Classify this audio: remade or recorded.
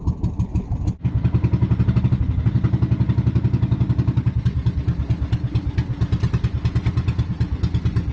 recorded